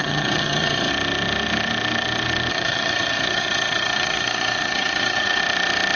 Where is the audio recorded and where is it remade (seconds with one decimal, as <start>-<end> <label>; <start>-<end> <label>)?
0.0-0.9 remade; 0.9-2.5 recorded; 2.5-5.4 remade; 5.4-6.0 recorded